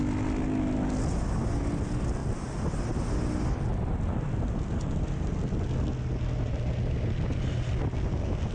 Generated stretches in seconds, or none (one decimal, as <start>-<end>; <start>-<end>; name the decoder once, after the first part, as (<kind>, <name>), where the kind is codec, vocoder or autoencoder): none